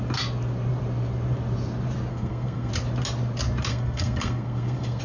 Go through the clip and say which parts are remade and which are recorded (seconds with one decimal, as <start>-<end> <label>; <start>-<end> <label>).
0.0-2.1 recorded; 2.1-2.7 remade; 2.7-3.7 recorded; 3.7-5.0 remade